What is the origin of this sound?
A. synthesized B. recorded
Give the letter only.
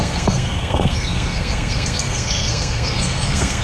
A